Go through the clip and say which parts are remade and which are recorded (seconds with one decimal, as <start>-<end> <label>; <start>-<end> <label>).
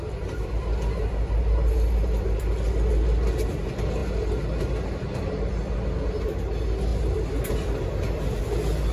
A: 0.0-8.9 recorded